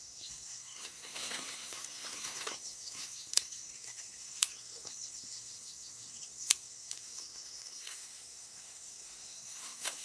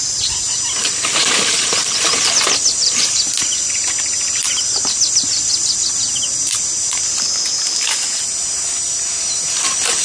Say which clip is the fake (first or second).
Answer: first